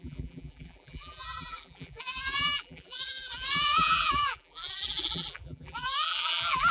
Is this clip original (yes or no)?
no